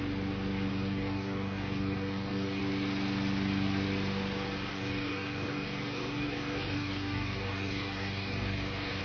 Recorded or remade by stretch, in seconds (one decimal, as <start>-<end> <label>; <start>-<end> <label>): 0.0-0.7 recorded; 0.7-2.6 remade; 2.6-4.7 recorded; 4.7-9.0 remade